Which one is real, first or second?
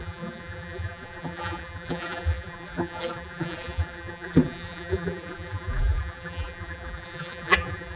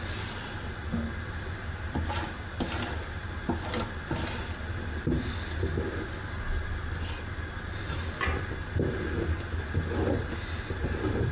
second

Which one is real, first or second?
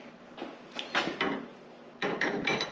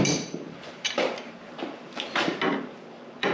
first